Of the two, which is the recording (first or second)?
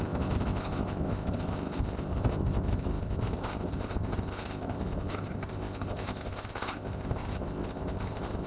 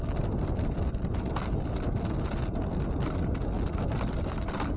second